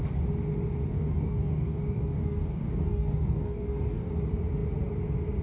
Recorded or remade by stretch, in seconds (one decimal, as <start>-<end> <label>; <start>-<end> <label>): 0.0-0.9 recorded; 0.9-4.1 remade; 4.1-5.4 recorded